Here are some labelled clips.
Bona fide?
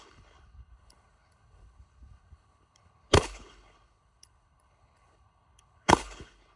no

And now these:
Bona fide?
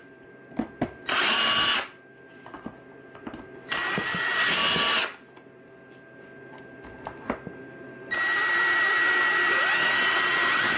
yes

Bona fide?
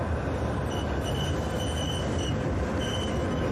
yes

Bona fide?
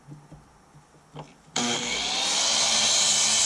yes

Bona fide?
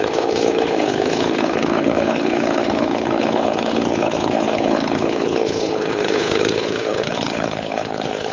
no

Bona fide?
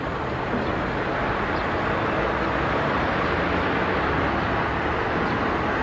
yes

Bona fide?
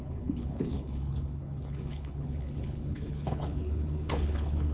no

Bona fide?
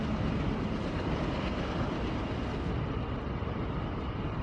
yes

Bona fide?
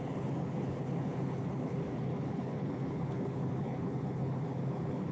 no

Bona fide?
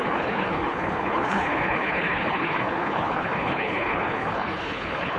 no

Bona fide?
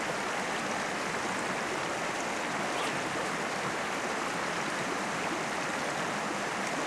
yes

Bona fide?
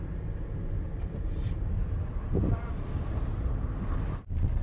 yes